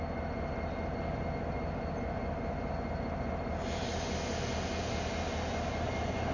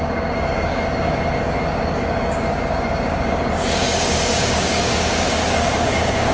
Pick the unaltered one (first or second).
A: first